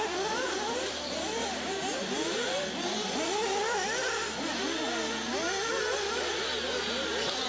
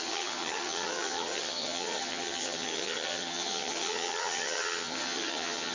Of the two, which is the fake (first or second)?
second